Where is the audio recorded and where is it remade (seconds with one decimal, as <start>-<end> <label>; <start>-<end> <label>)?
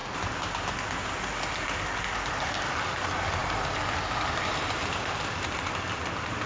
0.0-2.6 recorded; 2.6-6.5 remade